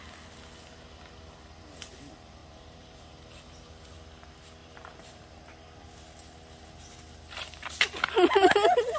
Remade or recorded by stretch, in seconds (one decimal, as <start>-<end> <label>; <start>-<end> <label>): 0.0-2.4 recorded; 2.4-3.1 remade; 3.1-4.6 recorded; 4.6-5.3 remade; 5.3-9.0 recorded